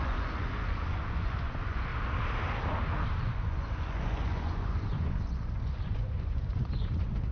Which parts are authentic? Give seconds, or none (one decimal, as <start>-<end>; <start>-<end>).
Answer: 1.9-3.2